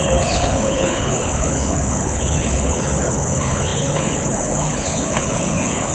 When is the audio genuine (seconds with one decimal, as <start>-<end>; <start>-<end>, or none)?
none